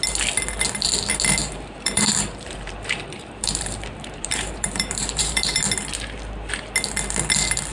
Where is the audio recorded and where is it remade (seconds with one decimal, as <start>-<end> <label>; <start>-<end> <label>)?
0.0-1.4 recorded; 1.4-5.6 remade; 5.6-7.7 recorded